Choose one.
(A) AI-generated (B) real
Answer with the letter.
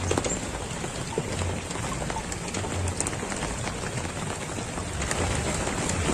B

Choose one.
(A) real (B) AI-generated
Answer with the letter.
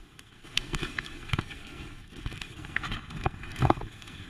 B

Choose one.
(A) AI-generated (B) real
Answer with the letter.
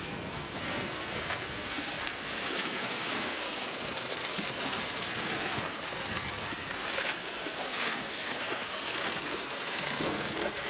A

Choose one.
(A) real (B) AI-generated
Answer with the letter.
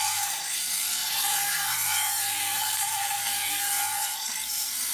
B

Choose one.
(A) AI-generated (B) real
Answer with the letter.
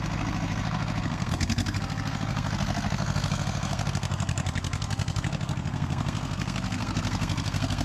A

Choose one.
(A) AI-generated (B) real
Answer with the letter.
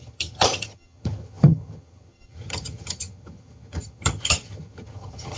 A